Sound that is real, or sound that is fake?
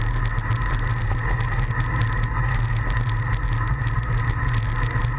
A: real